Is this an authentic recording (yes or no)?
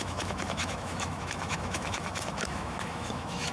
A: no